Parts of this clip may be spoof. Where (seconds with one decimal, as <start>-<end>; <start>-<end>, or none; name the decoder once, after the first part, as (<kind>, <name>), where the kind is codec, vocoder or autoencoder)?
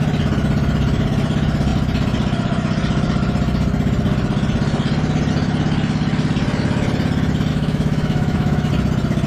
7.5-8.7 (autoencoder, DAC-VAE)